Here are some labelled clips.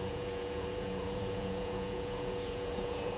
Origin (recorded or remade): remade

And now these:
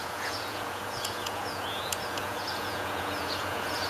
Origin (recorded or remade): remade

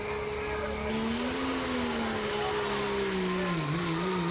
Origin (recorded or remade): recorded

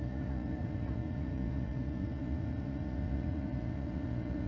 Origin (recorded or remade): remade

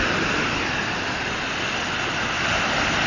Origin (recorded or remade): recorded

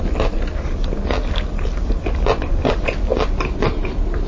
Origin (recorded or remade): recorded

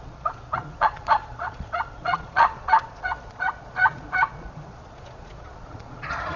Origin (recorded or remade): remade